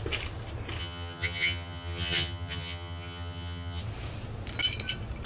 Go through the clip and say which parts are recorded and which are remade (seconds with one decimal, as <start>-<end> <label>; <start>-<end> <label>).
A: 0.0-0.8 recorded; 0.8-3.8 remade; 3.8-5.3 recorded